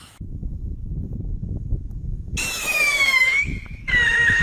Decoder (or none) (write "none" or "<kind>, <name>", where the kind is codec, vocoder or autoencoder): autoencoder, DAC-VAE